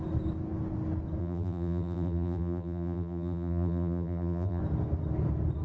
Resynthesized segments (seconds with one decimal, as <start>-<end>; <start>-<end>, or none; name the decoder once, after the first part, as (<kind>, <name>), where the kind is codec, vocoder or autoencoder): 1.2-4.6 (vocoder, BigVGAN v2)